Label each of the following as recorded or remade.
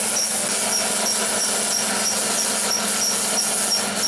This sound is recorded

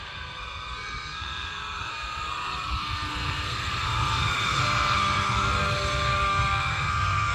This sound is remade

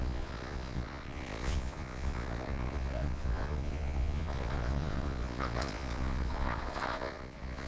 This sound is remade